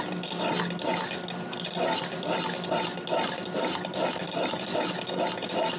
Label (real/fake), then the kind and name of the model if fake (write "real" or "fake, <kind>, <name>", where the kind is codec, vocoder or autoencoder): real